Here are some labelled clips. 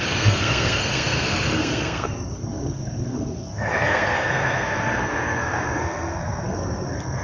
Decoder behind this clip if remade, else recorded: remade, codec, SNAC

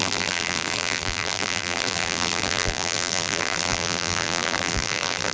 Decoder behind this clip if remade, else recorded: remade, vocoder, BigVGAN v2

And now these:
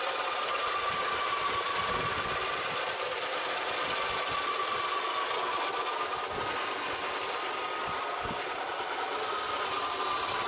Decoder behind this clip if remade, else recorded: recorded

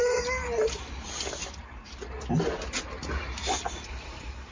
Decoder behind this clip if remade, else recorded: recorded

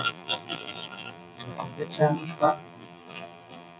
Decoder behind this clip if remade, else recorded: remade, vocoder, BigVGAN v2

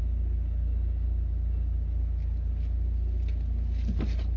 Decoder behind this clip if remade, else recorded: recorded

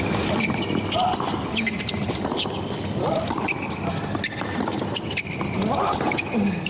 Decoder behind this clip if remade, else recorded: recorded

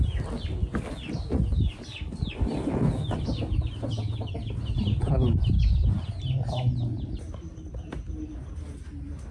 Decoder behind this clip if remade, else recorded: recorded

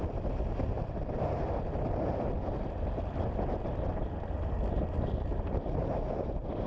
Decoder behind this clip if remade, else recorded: recorded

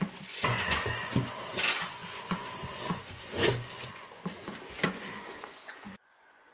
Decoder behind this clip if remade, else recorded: remade, vocoder, Vocos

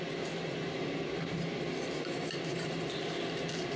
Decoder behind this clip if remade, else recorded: recorded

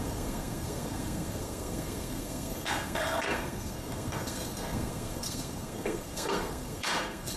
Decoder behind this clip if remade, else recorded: remade, codec, SNAC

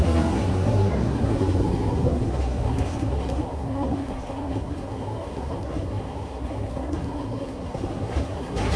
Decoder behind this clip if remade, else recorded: remade, codec, SNAC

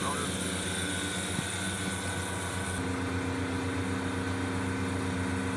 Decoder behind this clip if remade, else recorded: recorded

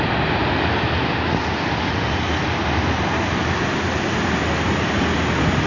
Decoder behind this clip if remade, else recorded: recorded